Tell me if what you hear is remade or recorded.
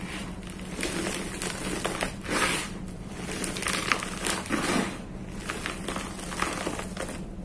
recorded